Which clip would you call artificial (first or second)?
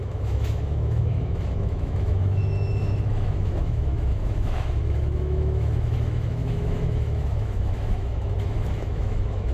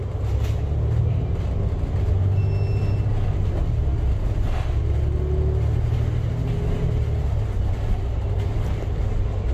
first